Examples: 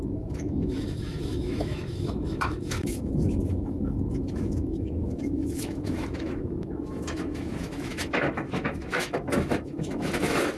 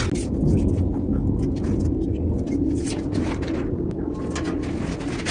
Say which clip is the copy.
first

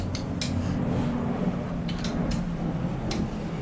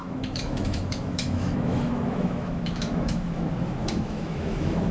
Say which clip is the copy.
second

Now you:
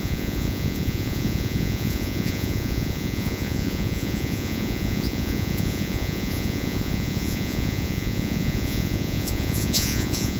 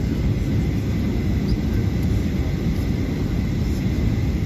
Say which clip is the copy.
first